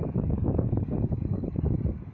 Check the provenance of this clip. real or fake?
fake